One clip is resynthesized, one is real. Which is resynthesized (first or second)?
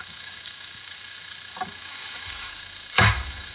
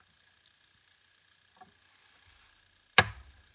first